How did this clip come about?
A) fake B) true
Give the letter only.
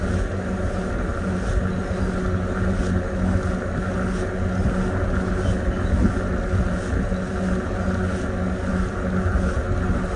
B